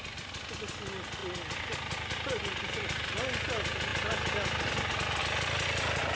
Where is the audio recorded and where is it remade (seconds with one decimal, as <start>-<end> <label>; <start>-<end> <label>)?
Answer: 0.0-6.2 recorded